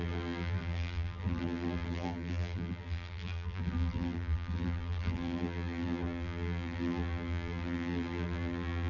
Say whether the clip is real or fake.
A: fake